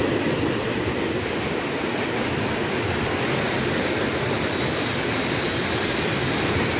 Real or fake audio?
real